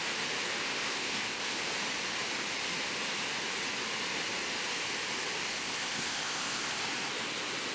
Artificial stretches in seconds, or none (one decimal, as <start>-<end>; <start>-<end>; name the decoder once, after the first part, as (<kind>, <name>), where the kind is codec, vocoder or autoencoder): 0.6-1.6 (codec, ZipCodec); 5.5-6.8